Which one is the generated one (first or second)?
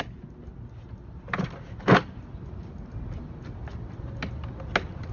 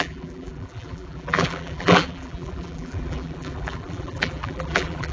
second